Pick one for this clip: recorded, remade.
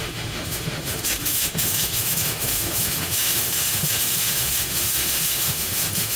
remade